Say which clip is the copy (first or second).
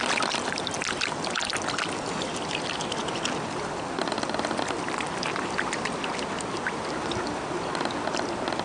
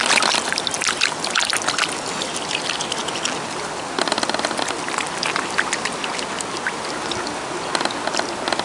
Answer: first